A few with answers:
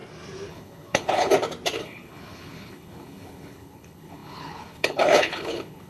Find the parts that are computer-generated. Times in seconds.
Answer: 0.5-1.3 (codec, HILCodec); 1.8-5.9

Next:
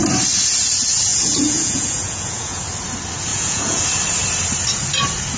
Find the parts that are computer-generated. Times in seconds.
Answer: 1.1-2.6 (vocoder, Vocos); 3.3-3.8

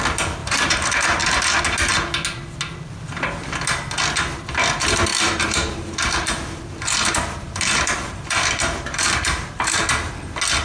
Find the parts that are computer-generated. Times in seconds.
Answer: 0.4-1.6 (vocoder, BigVGAN v2); 5.1-9.9

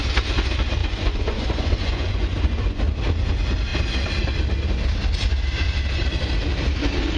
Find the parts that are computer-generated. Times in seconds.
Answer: 0.8-2.8 (vocoder, Vocos)

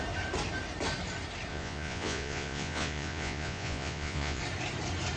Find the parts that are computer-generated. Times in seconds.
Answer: 1.5-4.4 (vocoder, Vocos)

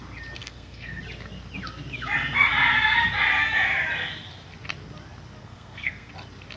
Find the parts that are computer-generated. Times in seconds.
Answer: 0.4-1.0 (codec, SNAC); 5.4-6.1